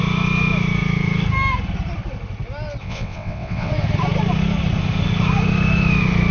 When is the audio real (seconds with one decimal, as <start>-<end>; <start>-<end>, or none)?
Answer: 0.0-2.8; 3.7-6.3